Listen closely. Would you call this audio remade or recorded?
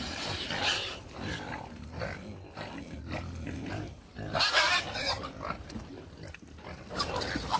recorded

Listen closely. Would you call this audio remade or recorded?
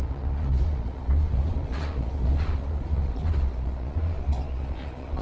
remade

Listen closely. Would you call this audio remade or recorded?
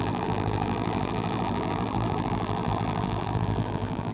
remade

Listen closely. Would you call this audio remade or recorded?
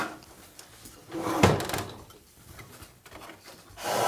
remade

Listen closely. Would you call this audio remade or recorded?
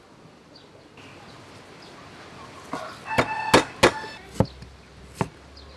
recorded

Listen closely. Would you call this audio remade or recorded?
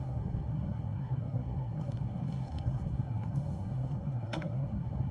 remade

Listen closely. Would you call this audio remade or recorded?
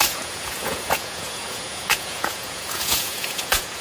remade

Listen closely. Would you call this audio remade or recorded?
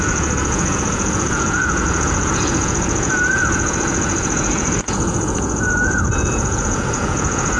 remade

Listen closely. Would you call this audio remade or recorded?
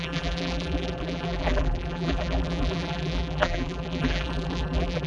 remade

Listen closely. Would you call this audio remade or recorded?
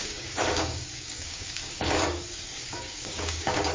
remade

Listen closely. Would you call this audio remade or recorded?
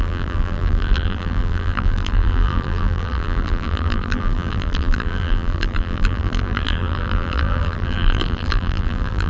remade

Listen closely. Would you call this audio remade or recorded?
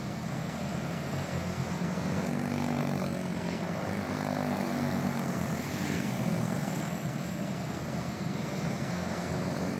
remade